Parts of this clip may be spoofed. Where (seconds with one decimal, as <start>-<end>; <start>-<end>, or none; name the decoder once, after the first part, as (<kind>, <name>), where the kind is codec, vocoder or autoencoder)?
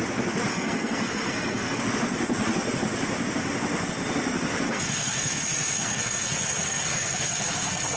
0.5-1.8 (codec, SNAC); 4.7-8.0